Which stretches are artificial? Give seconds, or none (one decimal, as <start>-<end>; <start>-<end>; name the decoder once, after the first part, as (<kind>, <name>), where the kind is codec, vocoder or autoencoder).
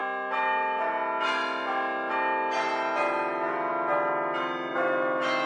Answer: none